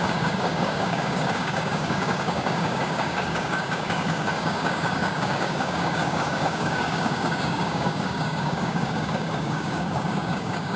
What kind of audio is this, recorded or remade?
remade